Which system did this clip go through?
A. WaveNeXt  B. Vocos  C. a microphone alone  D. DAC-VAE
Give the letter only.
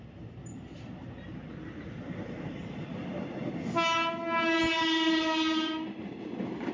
C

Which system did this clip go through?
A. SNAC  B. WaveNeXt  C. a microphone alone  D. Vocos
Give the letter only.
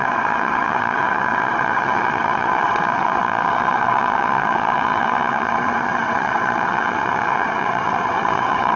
B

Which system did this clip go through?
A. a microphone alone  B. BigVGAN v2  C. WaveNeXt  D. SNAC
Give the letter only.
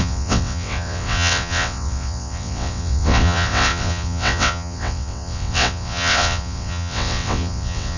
C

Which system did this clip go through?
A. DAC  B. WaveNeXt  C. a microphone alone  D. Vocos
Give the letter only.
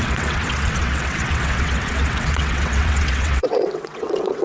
B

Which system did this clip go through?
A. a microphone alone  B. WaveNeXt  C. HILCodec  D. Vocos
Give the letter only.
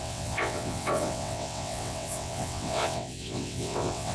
B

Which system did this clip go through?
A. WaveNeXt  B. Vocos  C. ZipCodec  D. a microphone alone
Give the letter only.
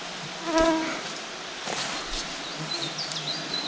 D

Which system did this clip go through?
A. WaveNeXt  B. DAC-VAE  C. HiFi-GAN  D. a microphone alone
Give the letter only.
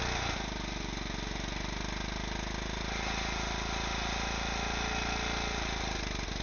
D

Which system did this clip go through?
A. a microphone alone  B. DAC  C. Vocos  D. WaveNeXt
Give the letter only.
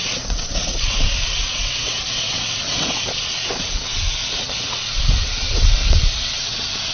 D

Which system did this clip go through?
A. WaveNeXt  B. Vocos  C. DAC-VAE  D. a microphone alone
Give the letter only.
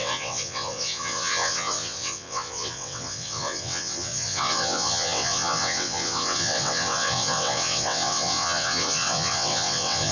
A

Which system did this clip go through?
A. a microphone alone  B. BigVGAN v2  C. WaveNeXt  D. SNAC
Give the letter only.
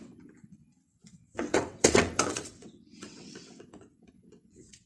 C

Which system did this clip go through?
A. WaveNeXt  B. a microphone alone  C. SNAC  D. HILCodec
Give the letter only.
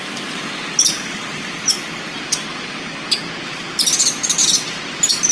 B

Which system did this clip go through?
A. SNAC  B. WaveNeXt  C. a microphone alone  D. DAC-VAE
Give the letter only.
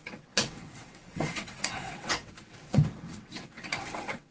B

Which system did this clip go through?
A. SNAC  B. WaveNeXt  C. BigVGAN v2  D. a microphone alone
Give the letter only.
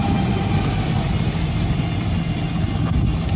D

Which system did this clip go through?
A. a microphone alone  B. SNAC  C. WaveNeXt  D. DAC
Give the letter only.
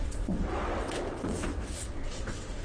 C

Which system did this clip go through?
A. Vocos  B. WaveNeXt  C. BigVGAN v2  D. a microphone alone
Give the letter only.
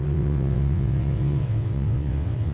B